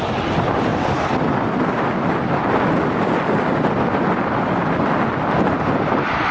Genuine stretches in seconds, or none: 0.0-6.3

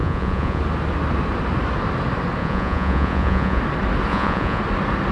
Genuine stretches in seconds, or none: 0.6-2.4; 3.6-4.1; 4.6-5.1